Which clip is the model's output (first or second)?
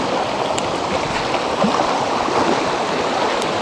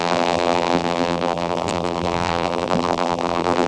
second